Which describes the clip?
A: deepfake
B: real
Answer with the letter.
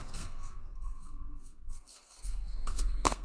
A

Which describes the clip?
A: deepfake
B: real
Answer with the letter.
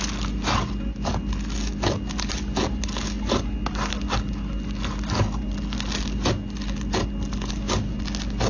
B